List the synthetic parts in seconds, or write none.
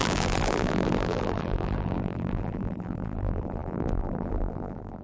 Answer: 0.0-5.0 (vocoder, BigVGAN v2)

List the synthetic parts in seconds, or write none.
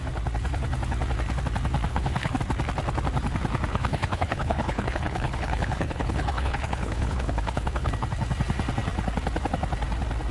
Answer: 1.9-2.4 (codec, HILCodec); 3.7-7.9